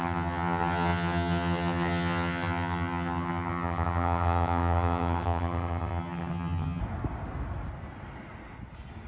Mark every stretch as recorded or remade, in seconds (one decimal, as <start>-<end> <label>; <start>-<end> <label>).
0.0-6.8 remade; 6.8-9.1 recorded